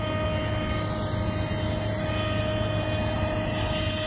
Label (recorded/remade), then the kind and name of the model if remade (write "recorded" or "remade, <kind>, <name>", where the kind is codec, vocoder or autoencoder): recorded